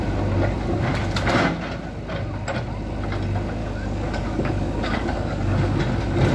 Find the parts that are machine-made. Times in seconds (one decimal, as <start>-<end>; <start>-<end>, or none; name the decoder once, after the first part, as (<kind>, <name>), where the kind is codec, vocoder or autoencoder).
3.6-5.8 (codec, DAC)